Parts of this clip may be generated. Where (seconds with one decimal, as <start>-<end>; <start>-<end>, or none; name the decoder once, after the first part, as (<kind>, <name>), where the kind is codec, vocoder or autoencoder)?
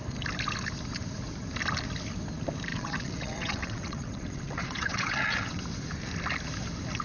2.7-5.6 (vocoder, WaveNeXt)